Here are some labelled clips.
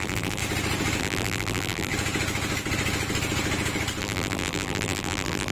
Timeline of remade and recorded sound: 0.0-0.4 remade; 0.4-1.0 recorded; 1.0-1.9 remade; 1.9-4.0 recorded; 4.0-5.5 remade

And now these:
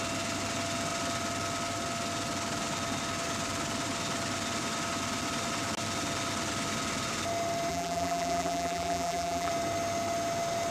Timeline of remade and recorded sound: 0.0-7.7 recorded; 7.7-9.5 remade; 9.5-10.7 recorded